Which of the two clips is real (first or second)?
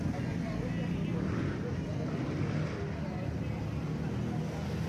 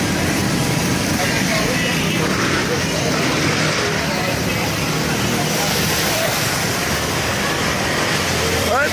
first